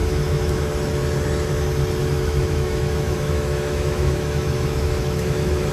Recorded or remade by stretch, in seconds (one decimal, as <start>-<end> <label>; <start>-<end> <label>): 0.0-0.7 remade; 0.7-2.0 recorded; 2.0-5.7 remade